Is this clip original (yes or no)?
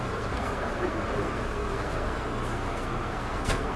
no